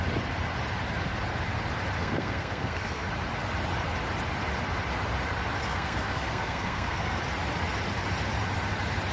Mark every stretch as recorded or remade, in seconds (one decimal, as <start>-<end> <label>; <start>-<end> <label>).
0.0-2.0 recorded; 2.0-3.1 remade; 3.1-5.6 recorded; 5.6-7.2 remade; 7.2-9.1 recorded